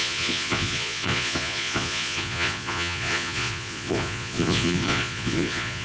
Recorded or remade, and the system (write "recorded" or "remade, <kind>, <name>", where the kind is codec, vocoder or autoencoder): remade, vocoder, Vocos